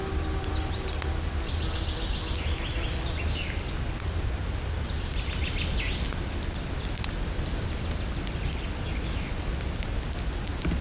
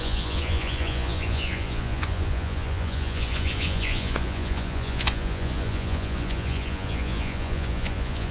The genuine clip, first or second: first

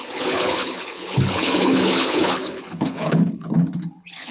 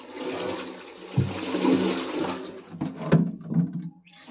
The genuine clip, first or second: second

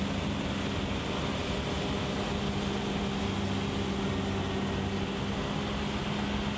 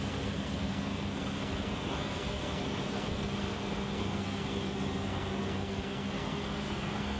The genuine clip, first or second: first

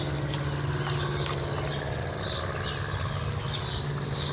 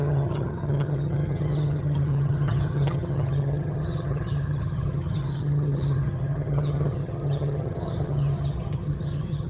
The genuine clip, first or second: first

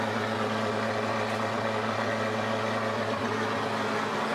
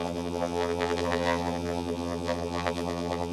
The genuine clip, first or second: first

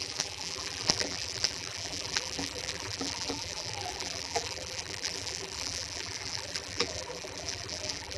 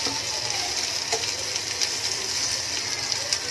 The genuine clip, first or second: second